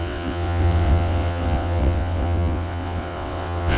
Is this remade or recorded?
remade